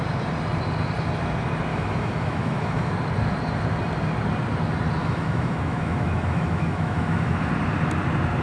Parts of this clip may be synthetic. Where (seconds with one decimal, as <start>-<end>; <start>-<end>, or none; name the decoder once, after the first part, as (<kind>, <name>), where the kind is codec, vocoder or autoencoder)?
1.7-2.9 (autoencoder, DAC-VAE); 5.0-7.5